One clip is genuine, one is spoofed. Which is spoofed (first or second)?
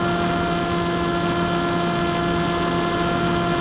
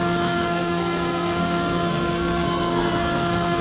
second